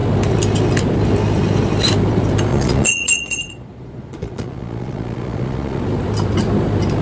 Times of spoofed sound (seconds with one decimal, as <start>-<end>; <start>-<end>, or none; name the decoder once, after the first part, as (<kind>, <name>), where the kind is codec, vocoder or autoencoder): 2.5-5.8 (vocoder, Vocos)